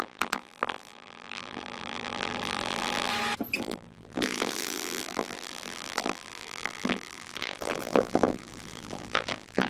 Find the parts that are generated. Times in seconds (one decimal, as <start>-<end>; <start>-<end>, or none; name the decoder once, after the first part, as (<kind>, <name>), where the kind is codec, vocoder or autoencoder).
0.0-3.1 (vocoder, BigVGAN v2); 3.6-9.7